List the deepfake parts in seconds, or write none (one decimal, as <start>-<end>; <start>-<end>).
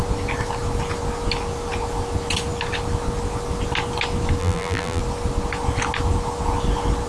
4.4-5.0